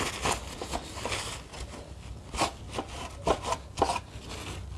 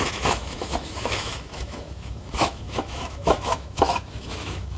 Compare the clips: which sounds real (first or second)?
first